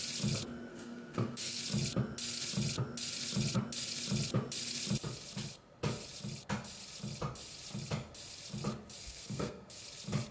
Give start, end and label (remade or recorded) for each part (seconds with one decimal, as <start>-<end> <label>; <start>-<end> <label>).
0.0-0.7 recorded; 0.7-1.6 remade; 1.6-9.0 recorded; 9.0-9.8 remade; 9.8-10.3 recorded